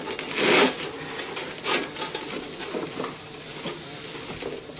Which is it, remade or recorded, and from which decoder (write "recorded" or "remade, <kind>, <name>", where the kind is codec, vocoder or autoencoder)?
recorded